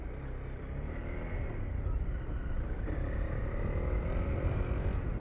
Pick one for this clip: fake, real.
real